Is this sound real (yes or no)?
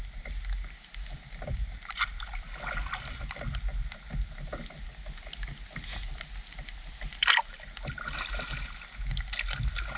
yes